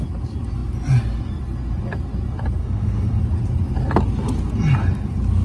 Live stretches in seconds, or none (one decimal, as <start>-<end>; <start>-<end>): 0.0-2.6; 3.2-5.4